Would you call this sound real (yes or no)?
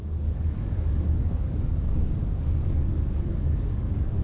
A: no